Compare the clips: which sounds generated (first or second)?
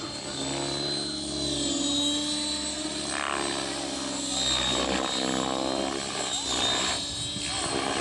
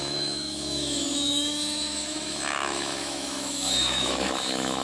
second